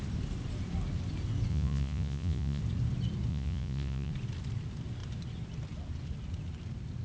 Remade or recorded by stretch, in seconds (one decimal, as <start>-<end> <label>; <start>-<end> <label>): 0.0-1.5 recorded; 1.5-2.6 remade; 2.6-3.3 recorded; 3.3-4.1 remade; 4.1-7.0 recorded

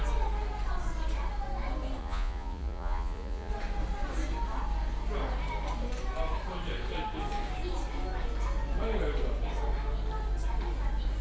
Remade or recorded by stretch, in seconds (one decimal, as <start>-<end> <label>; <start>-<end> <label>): 0.0-2.0 recorded; 2.0-3.5 remade; 3.5-11.2 recorded

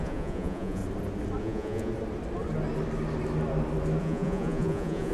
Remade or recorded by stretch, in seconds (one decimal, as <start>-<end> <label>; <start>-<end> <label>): 0.0-0.8 remade; 0.8-1.4 recorded; 1.4-1.9 remade; 1.9-4.0 recorded; 4.0-5.1 remade

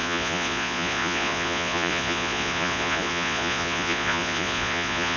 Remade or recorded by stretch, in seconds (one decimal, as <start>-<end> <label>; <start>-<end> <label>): 0.0-5.2 remade

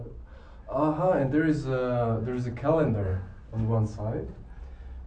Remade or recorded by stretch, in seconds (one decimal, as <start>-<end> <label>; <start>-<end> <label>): 0.0-5.1 recorded